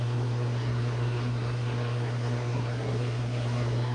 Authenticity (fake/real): fake